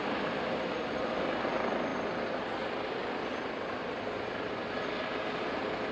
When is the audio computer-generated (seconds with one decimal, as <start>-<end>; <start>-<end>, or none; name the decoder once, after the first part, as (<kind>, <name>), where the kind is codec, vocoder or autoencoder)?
none